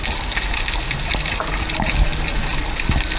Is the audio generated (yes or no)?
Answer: no